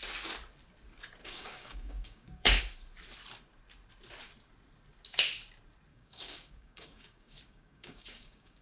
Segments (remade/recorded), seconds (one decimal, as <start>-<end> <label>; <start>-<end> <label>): 0.0-1.2 recorded; 1.2-2.6 remade; 2.6-5.9 recorded; 5.9-8.6 remade